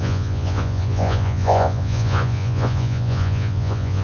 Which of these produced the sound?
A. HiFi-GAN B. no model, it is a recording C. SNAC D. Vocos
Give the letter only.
D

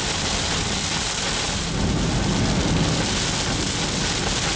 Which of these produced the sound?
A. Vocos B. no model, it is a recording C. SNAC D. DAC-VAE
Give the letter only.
B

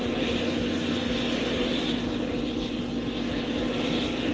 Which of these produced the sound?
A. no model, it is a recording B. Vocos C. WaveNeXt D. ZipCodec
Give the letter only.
A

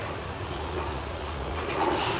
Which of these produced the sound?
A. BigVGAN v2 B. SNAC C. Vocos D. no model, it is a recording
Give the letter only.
C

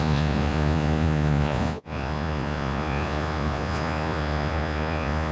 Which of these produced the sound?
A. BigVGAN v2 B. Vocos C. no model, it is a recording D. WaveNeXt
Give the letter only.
B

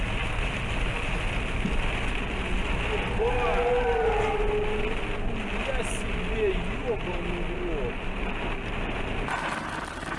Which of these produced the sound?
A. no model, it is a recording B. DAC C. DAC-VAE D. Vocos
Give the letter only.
A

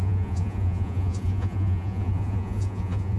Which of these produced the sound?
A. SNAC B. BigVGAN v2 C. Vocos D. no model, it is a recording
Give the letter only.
C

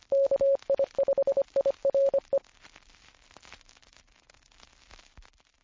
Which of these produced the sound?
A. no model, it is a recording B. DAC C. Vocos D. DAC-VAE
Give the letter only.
A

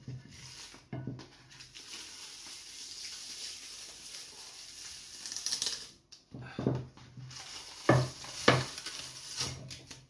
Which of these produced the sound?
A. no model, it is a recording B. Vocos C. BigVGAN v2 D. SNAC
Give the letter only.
A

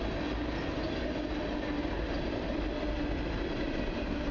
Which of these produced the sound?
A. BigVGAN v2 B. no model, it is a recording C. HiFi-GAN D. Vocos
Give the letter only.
B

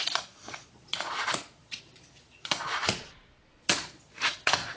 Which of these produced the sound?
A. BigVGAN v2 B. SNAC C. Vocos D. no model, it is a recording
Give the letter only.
C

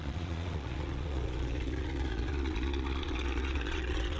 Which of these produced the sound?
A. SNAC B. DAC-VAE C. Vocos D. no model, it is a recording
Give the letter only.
C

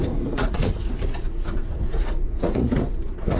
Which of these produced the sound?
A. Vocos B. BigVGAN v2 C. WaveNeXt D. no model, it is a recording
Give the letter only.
A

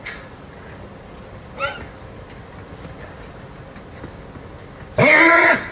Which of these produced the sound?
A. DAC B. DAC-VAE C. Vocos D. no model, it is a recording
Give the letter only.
D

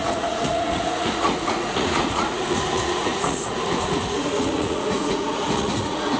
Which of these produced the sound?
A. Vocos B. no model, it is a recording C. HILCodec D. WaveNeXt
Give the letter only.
A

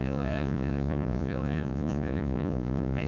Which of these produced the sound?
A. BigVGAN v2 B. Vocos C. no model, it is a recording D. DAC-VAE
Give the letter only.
B